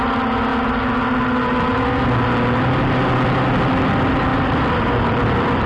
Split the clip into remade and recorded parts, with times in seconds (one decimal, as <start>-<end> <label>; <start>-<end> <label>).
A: 0.0-4.3 recorded; 4.3-5.7 remade

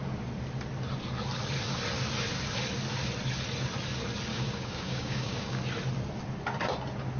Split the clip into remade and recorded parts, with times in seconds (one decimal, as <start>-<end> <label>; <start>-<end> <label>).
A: 0.0-4.3 recorded; 4.3-5.6 remade; 5.6-7.2 recorded

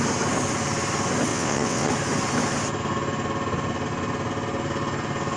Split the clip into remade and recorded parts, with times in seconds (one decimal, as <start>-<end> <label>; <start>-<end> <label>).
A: 0.0-1.3 recorded; 1.3-1.9 remade; 1.9-5.4 recorded

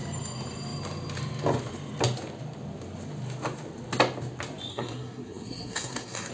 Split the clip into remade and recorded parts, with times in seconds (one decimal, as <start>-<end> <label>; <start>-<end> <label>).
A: 0.0-4.7 recorded; 4.7-6.3 remade

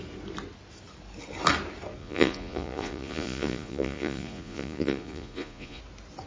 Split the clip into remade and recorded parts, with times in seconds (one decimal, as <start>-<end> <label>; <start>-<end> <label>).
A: 0.0-2.0 recorded; 2.0-5.8 remade; 5.8-6.3 recorded